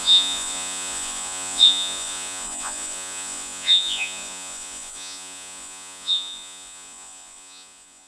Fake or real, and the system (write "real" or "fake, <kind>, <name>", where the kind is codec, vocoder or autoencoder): fake, vocoder, Vocos